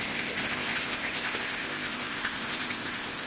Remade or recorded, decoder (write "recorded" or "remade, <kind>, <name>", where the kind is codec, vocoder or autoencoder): remade, codec, ZipCodec